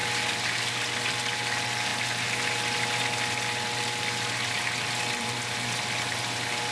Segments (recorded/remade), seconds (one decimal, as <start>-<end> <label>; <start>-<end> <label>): 0.0-6.7 recorded